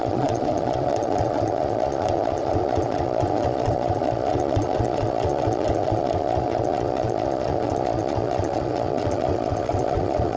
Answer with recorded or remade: remade